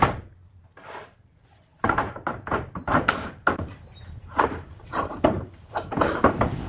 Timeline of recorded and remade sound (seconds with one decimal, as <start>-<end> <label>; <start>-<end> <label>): 0.0-1.7 recorded; 1.7-5.7 remade; 5.7-6.7 recorded